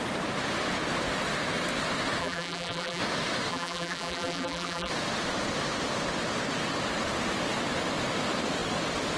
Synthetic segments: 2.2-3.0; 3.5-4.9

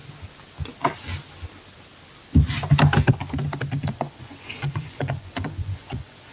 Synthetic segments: 3.8-6.3

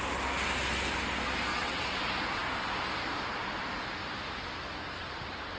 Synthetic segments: 1.5-2.0

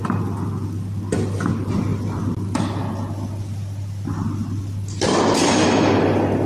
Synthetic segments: none